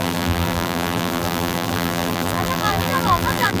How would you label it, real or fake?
fake